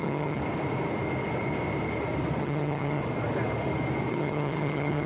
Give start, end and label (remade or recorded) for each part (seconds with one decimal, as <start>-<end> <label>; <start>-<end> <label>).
0.0-0.4 remade; 0.4-2.4 recorded; 2.4-3.0 remade; 3.0-4.1 recorded; 4.1-5.1 remade